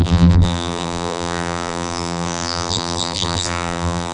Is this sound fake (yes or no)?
yes